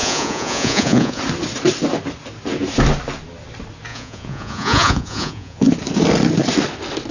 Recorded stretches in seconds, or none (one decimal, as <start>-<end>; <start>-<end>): 1.2-3.9; 5.7-7.1